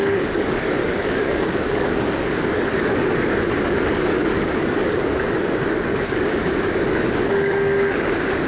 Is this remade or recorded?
remade